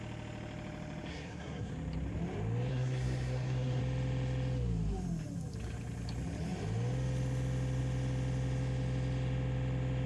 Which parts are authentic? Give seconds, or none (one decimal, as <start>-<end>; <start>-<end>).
0.0-1.1; 1.7-2.7; 3.8-10.1